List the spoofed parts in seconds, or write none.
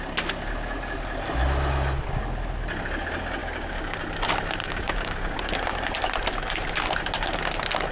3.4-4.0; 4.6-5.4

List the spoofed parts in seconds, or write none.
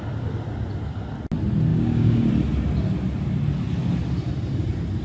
1.7-2.3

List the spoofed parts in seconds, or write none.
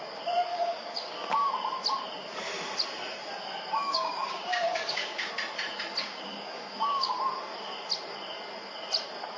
0.5-1.5; 3.8-5.3; 6.0-7.2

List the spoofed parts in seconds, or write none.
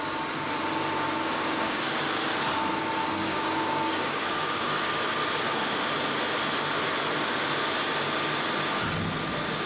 1.3-1.9; 3.0-5.7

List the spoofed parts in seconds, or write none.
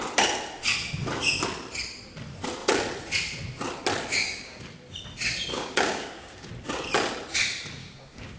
4.1-4.6; 5.5-6.5; 7.8-8.4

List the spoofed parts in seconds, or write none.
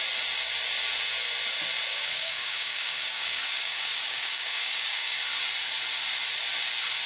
1.9-5.3